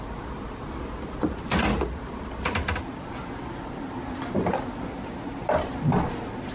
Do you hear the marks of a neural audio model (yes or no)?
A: no